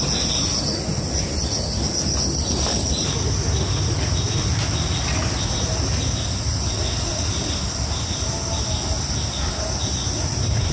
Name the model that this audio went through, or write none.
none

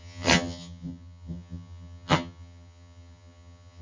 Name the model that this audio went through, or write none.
vocoder, HiFi-GAN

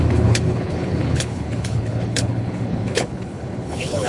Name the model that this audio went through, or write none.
codec, HILCodec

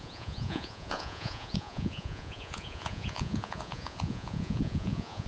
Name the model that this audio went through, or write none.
vocoder, Vocos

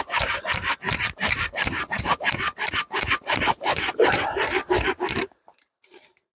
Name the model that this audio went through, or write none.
vocoder, BigVGAN v2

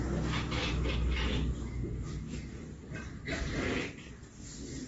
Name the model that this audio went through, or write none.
none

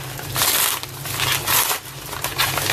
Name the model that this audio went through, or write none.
none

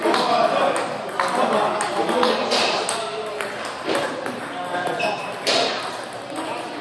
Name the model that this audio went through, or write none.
none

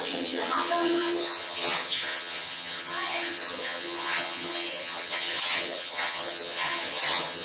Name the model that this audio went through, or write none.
vocoder, HiFi-GAN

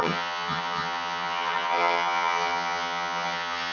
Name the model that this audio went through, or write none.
vocoder, HiFi-GAN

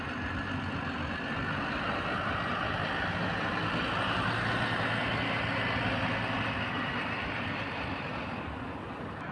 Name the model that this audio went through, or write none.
none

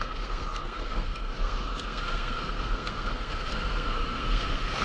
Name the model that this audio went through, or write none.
codec, SNAC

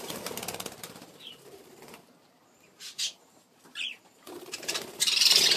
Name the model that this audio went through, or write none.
vocoder, BigVGAN v2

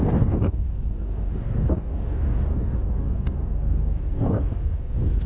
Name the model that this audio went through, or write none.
codec, DAC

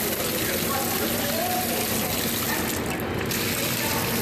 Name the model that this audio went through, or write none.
none